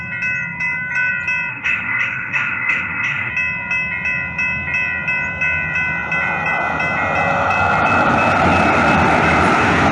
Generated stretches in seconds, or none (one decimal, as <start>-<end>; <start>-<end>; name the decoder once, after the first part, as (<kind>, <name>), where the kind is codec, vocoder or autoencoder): 1.5-3.3 (codec, SNAC)